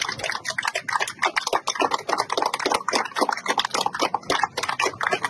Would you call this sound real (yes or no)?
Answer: yes